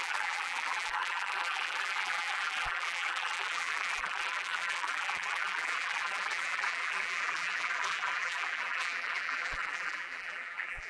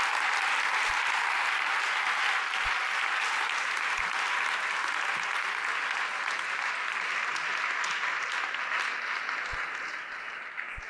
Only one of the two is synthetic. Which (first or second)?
first